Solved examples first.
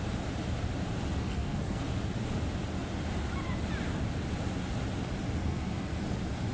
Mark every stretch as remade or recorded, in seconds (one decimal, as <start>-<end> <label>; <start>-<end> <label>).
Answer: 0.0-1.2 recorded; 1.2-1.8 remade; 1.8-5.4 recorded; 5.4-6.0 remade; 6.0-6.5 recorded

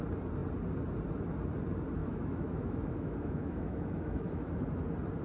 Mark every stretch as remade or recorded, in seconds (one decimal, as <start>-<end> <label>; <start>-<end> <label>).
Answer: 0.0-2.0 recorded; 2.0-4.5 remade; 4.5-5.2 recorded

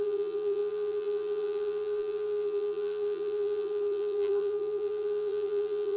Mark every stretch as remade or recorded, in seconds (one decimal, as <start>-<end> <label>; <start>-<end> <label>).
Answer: 0.0-6.0 remade

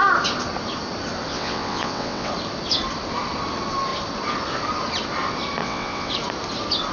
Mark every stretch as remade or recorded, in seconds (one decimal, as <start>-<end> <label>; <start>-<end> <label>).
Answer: 0.0-1.3 recorded; 1.3-2.3 remade; 2.3-5.6 recorded; 5.6-6.1 remade; 6.1-6.9 recorded

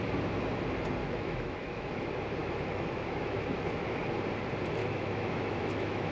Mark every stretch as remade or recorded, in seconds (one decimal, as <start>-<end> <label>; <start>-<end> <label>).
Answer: 0.0-1.0 recorded; 1.0-2.0 remade; 2.0-2.4 recorded; 2.4-4.0 remade; 4.0-4.8 recorded; 4.8-6.1 remade